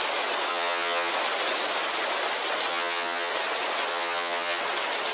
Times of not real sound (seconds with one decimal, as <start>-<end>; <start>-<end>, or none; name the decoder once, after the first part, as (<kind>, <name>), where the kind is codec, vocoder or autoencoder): 0.5-1.1 (vocoder, HiFi-GAN); 2.7-3.3; 3.9-4.6